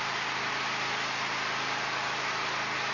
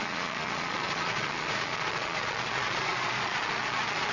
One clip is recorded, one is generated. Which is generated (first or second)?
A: second